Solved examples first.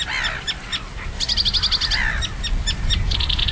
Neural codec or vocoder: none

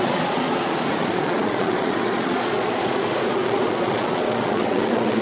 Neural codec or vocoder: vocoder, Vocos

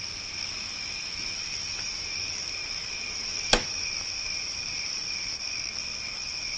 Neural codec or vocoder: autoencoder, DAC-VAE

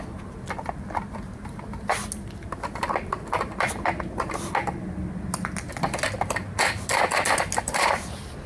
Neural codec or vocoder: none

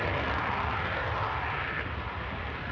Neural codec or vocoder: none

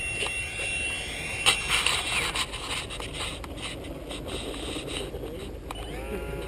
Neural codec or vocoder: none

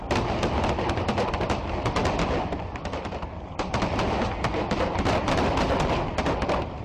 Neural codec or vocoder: none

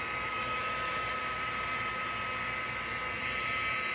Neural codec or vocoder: none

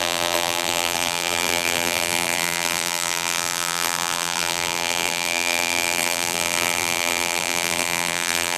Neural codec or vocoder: vocoder, BigVGAN v2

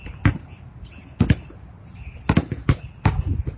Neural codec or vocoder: none